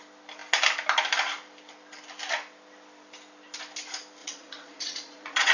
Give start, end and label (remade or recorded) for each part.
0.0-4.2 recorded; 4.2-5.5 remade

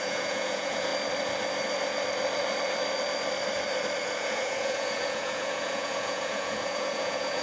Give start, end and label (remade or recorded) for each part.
0.0-0.9 remade; 0.9-4.0 recorded; 4.0-7.4 remade

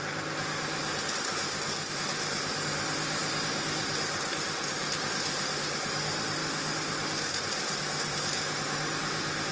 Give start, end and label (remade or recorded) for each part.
0.0-9.5 recorded

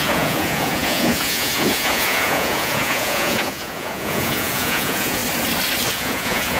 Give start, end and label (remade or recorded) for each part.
0.0-5.2 remade; 5.2-5.9 recorded; 5.9-6.6 remade

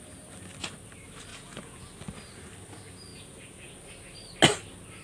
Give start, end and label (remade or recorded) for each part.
0.0-1.3 recorded; 1.3-1.8 remade; 1.8-3.1 recorded; 3.1-3.7 remade; 3.7-5.0 recorded